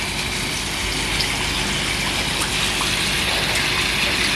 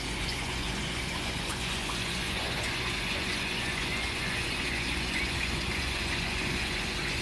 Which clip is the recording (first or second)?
first